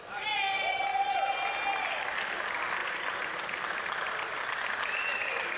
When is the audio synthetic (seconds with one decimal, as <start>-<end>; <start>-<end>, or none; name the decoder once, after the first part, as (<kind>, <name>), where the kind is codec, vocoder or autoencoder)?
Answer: 0.9-1.5 (vocoder, BigVGAN v2); 2.8-3.4